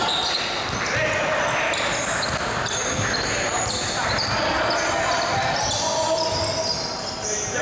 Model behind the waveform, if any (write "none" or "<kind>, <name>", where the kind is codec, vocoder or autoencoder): none